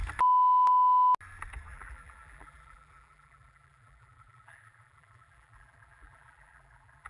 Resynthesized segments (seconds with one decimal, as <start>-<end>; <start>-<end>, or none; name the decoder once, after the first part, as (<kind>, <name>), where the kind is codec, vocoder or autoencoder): 1.7-7.1 (vocoder, BigVGAN v2)